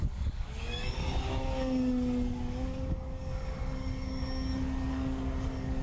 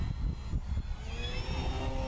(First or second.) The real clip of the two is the second